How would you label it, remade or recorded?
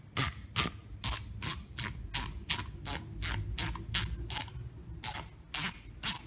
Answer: recorded